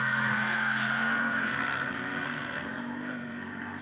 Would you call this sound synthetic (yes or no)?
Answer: yes